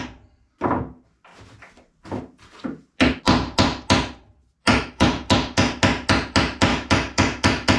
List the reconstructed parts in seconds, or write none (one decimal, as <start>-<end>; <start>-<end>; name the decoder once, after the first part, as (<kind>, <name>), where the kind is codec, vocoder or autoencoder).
4.7-5.7 (autoencoder, DAC-VAE); 6.7-7.8